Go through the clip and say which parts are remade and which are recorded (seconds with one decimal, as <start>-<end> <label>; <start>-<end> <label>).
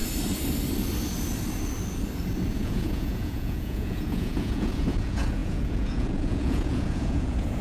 0.0-2.5 recorded; 2.5-7.6 remade